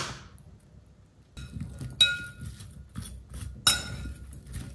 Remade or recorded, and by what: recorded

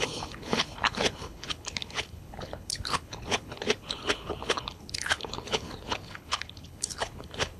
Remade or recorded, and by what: remade, codec, HILCodec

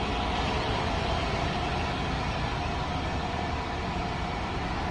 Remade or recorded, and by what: recorded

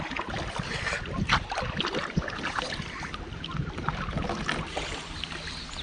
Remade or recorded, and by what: recorded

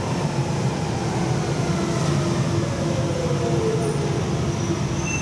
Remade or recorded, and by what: recorded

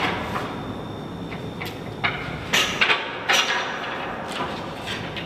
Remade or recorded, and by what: recorded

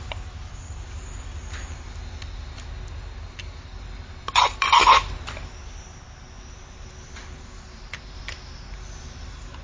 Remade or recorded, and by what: recorded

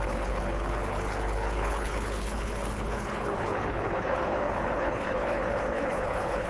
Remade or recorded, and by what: remade, codec, HILCodec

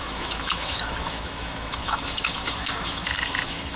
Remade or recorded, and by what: remade, autoencoder, DAC-VAE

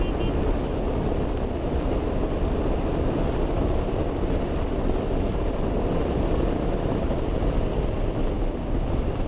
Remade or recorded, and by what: recorded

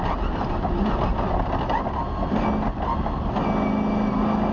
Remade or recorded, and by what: recorded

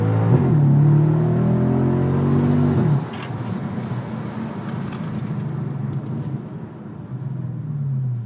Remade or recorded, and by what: recorded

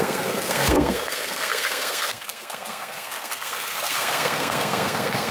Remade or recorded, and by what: remade, codec, SNAC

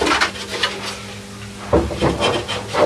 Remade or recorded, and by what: recorded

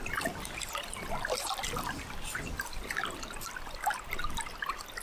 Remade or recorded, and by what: recorded